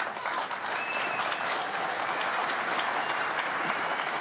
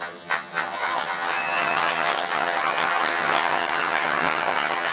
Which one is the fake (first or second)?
second